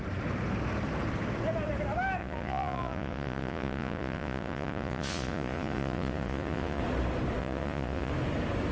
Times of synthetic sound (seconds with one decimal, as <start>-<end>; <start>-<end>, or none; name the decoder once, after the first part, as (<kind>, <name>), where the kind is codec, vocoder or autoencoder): 2.2-6.8 (vocoder, Vocos); 7.4-8.1